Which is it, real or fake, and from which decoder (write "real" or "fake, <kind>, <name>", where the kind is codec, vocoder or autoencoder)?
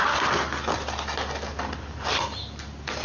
real